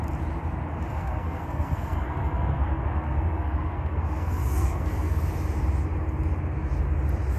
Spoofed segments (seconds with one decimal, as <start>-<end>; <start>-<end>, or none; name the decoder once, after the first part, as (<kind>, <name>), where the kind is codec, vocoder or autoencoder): 0.9-5.2 (codec, SNAC)